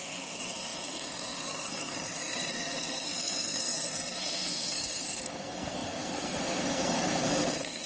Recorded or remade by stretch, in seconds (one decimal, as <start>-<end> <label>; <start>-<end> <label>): 0.0-7.9 remade